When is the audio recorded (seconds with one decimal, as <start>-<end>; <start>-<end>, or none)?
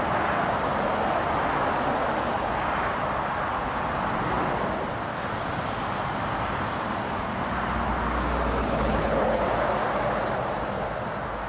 0.0-8.6; 9.4-11.5